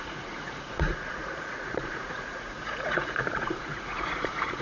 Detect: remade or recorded remade